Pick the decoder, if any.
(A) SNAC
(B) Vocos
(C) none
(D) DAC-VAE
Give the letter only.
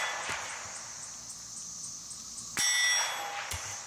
C